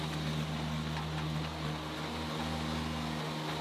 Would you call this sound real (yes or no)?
yes